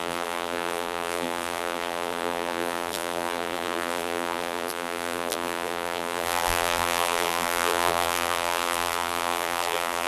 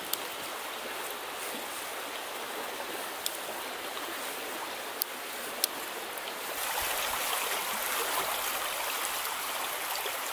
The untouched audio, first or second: second